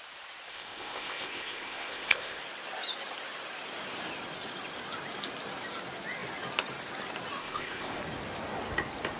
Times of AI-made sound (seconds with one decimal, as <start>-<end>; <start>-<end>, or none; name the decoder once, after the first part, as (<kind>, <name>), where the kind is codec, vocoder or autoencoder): 0.5-2.4 (codec, ZipCodec); 7.4-8.0